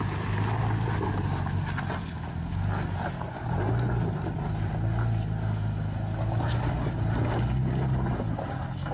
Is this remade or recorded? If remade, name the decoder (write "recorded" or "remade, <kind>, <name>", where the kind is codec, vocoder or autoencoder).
recorded